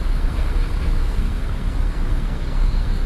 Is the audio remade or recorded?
remade